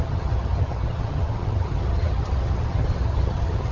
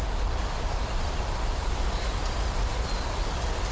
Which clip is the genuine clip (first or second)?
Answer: second